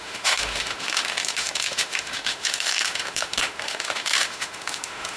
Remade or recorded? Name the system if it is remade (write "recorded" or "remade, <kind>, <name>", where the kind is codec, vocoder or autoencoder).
remade, autoencoder, DAC-VAE